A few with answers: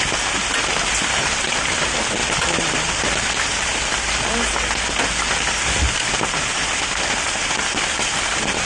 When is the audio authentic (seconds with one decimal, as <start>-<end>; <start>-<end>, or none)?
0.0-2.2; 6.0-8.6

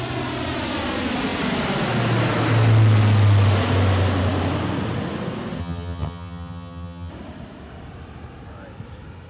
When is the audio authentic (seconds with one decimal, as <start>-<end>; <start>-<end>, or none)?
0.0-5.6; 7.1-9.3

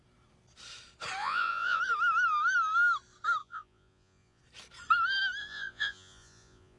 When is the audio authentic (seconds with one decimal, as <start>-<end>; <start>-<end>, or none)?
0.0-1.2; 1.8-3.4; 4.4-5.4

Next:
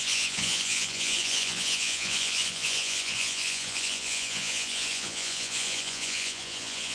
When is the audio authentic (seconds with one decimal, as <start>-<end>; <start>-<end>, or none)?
none